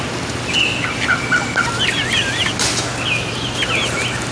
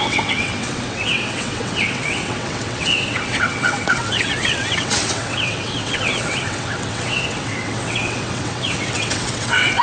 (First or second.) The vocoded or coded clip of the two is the second